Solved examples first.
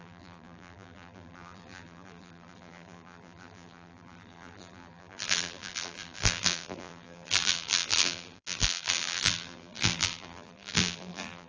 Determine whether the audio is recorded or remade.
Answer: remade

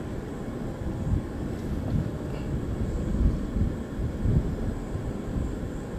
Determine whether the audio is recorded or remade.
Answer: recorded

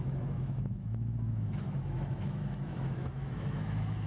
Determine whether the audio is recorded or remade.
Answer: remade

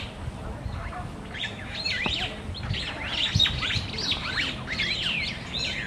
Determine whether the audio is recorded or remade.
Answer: recorded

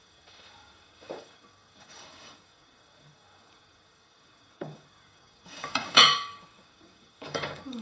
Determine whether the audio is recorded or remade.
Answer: remade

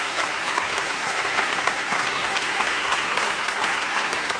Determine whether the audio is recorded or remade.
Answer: remade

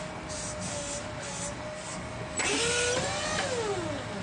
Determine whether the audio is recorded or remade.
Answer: recorded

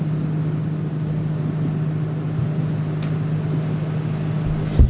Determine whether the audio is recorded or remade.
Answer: recorded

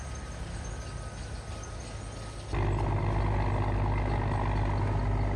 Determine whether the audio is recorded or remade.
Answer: recorded